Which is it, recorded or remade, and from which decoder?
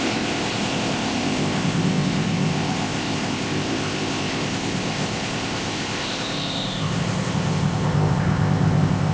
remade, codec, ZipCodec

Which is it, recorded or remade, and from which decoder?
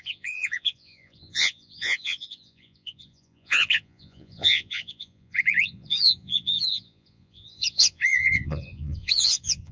remade, vocoder, Vocos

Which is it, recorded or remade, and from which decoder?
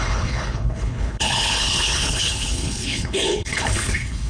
remade, codec, HILCodec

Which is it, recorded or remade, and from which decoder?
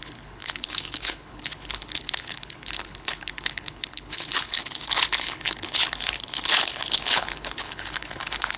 remade, codec, HILCodec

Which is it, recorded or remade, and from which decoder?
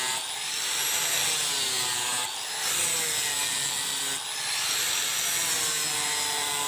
recorded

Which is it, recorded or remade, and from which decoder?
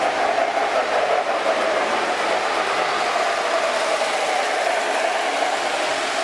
recorded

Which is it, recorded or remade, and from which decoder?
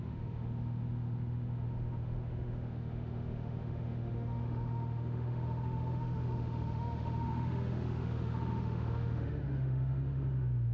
remade, autoencoder, DAC-VAE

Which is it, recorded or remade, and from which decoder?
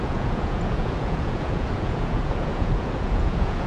remade, vocoder, Vocos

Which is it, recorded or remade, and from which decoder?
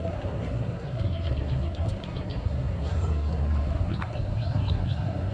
remade, codec, SNAC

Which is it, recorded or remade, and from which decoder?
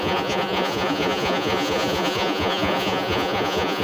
remade, vocoder, Vocos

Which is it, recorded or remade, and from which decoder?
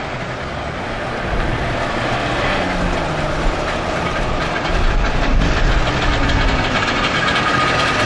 recorded